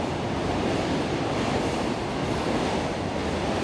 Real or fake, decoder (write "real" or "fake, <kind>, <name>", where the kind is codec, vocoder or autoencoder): fake, vocoder, BigVGAN v2